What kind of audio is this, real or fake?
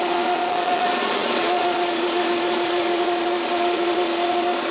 fake